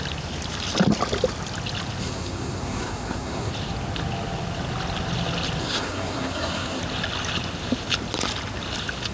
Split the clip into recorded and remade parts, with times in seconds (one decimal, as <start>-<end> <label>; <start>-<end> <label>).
0.0-2.0 recorded; 2.0-3.5 remade; 3.5-5.6 recorded; 5.6-6.8 remade; 6.8-9.1 recorded